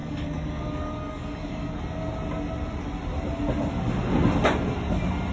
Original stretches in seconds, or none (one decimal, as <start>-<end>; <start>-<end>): 1.8-5.3

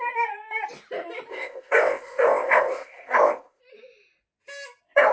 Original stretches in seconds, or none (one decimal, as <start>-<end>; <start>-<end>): 0.0-1.3; 3.6-5.1

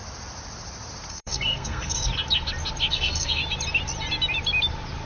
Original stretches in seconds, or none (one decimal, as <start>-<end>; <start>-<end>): 0.0-1.1; 2.1-2.9; 3.4-5.1

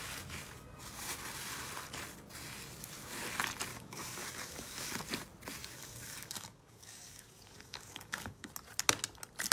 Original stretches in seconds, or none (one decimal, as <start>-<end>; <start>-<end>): 0.0-3.7; 4.9-5.6; 8.5-9.5

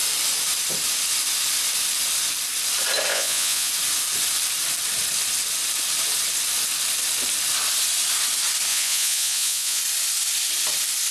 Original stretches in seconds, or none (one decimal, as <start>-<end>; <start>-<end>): 0.0-3.1; 3.7-8.7; 9.8-11.1

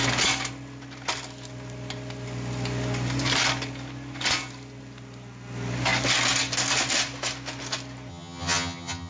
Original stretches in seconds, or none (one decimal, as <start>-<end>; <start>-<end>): 0.0-8.1